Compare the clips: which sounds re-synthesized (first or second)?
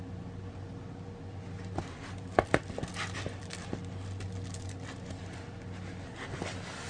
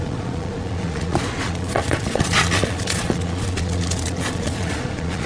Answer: second